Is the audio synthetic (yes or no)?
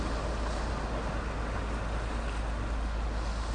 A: no